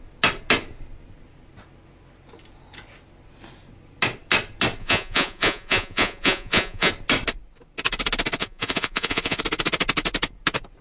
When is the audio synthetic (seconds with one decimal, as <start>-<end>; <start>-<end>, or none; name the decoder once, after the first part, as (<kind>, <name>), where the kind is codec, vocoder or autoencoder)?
4.8-6.9 (vocoder, Vocos); 8.4-9.4